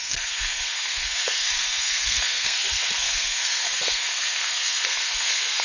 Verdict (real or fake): fake